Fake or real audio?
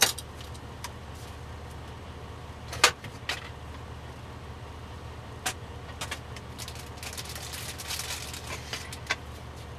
real